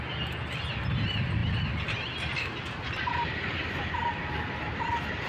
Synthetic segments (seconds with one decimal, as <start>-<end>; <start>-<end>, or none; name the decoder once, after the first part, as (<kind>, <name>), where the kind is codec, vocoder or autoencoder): none